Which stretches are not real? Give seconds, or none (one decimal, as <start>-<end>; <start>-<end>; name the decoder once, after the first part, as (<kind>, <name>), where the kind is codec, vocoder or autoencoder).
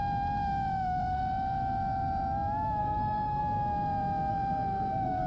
2.8-3.4 (codec, SNAC); 4.3-5.3